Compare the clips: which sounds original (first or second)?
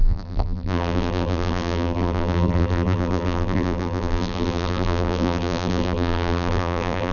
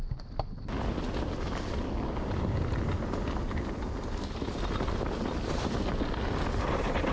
second